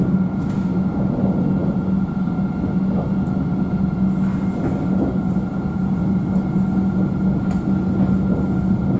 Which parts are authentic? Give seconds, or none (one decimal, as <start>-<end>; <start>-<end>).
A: 0.0-9.0